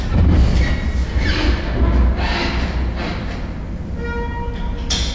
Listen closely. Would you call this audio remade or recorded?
recorded